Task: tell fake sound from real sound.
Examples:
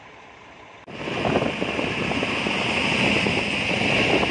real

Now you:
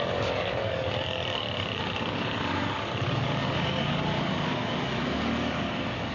fake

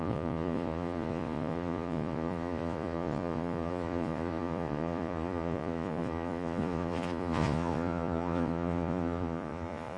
fake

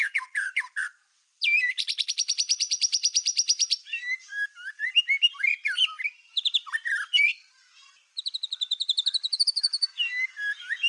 fake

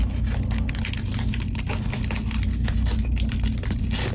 real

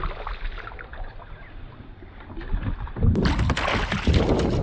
real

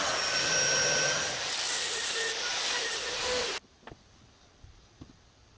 real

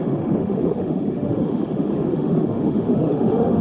fake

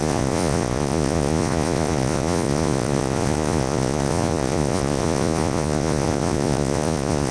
fake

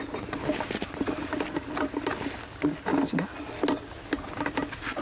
real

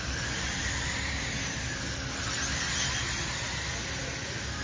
real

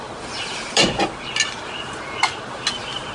real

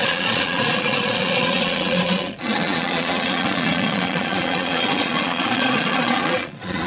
fake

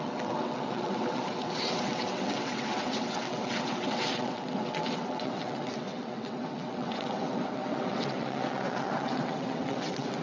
fake